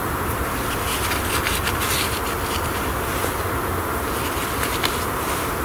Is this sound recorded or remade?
recorded